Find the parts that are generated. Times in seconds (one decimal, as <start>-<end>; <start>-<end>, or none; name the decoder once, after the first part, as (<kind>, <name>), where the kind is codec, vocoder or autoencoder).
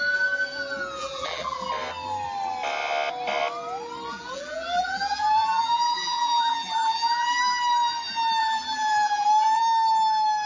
1.0-1.7 (vocoder, BigVGAN v2); 4.1-7.4; 8.4-9.6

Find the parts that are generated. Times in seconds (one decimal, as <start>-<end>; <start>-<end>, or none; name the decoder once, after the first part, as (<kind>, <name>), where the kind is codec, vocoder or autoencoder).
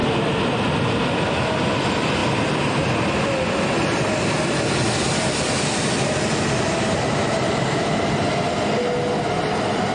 none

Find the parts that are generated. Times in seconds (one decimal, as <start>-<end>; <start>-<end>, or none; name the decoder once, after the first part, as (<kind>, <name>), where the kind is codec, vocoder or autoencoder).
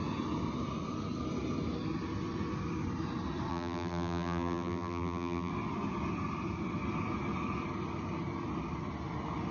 3.5-5.5 (vocoder, BigVGAN v2)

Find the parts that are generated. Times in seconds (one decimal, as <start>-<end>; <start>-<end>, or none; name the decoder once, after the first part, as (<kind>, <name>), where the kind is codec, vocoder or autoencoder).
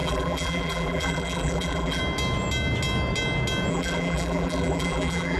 0.0-2.0 (vocoder, BigVGAN v2); 3.7-5.4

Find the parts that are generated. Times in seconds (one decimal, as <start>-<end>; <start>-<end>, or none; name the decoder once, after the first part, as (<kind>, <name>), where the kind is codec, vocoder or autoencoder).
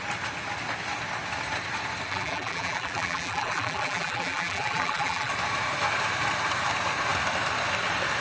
2.1-5.3 (vocoder, BigVGAN v2)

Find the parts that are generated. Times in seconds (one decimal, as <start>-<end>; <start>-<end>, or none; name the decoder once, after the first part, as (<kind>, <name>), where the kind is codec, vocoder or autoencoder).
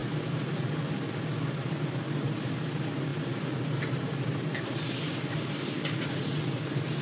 0.0-0.8 (vocoder, BigVGAN v2); 3.1-5.7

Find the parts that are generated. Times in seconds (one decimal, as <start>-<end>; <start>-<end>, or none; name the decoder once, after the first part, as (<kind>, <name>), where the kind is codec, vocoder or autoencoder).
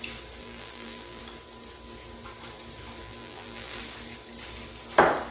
0.4-1.2 (vocoder, BigVGAN v2); 3.0-3.8